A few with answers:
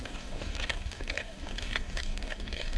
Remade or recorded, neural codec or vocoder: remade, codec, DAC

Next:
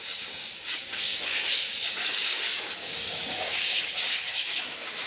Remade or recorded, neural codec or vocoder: remade, codec, DAC